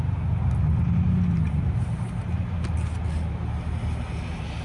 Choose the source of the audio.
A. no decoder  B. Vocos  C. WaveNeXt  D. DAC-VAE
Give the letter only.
A